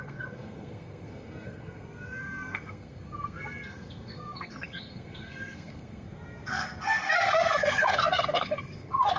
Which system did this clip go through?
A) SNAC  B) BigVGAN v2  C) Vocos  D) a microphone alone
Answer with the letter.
A